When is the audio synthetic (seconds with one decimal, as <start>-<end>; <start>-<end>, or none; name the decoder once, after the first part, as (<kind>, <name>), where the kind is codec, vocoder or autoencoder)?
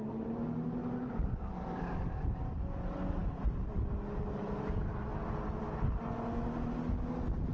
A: none